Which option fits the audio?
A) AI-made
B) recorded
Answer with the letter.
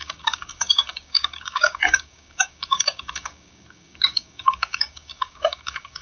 A